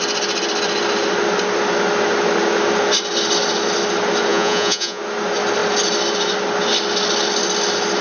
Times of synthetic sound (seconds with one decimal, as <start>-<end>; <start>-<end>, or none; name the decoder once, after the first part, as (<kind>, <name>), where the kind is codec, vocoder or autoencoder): 4.3-5.0 (vocoder, Vocos)